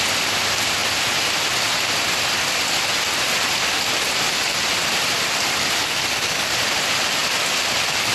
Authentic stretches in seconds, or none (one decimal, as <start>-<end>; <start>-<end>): 0.0-5.8; 6.6-8.1